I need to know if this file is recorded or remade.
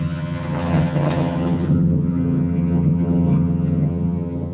remade